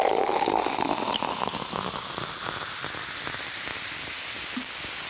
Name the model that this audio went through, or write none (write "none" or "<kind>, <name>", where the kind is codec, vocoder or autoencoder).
none